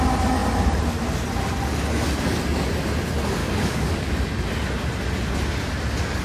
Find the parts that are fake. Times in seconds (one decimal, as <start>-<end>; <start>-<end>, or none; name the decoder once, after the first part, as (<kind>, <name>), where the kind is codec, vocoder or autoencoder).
3.4-4.1 (codec, DAC)